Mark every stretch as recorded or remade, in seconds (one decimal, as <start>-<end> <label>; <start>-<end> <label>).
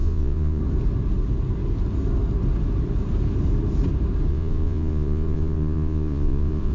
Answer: 0.0-0.6 remade; 0.6-4.3 recorded; 4.3-6.7 remade